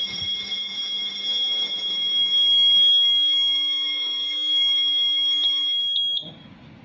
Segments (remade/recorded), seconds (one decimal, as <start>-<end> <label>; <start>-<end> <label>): 0.0-2.9 recorded; 2.9-5.8 remade; 5.8-6.8 recorded

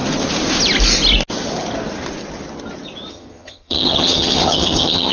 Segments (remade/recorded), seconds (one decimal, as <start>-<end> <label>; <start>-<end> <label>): 0.0-3.1 recorded; 3.1-5.1 remade